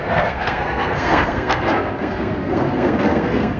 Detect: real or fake fake